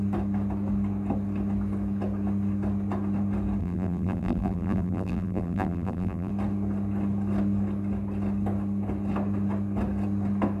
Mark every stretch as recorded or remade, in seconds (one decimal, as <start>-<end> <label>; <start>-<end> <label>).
0.0-3.6 recorded; 3.6-6.3 remade; 6.3-10.6 recorded